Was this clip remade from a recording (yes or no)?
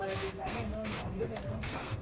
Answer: yes